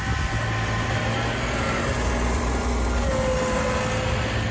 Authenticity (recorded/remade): recorded